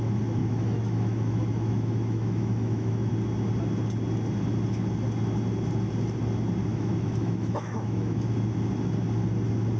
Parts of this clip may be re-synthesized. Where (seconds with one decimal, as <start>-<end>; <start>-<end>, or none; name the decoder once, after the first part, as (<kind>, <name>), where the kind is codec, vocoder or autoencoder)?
0.4-3.1 (autoencoder, DAC-VAE); 6.7-8.3